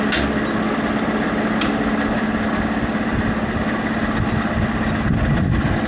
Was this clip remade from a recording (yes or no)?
no